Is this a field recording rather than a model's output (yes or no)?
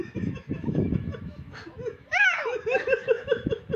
no